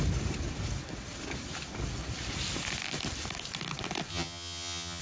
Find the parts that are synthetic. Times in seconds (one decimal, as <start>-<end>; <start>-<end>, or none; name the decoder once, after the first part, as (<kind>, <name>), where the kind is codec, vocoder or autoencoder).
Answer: 4.1-5.0 (vocoder, HiFi-GAN)